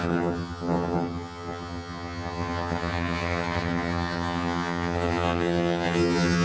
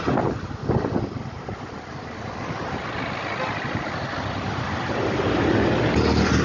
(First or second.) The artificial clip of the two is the first